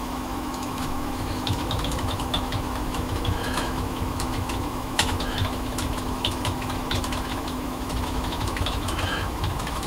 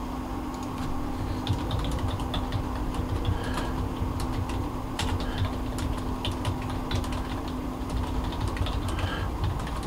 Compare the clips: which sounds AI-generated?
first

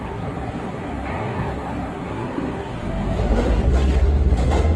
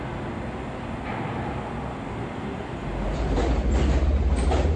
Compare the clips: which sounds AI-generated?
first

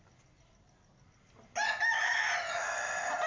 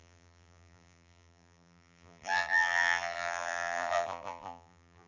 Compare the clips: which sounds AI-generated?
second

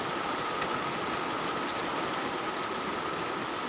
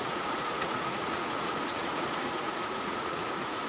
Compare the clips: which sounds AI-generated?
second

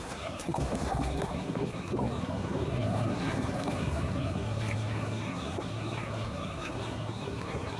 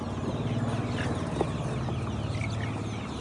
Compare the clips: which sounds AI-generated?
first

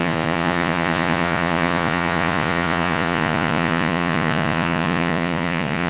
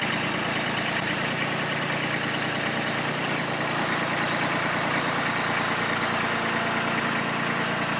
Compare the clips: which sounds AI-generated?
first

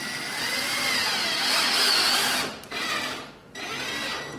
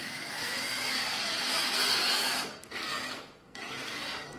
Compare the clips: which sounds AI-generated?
second